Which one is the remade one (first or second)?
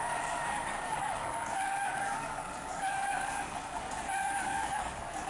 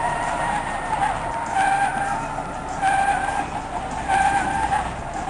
first